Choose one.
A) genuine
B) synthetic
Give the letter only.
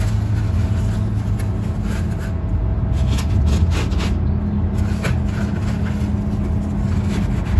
A